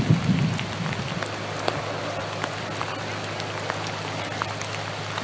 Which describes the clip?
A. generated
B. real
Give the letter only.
B